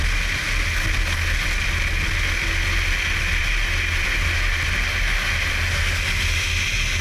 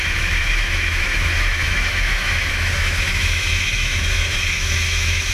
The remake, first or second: second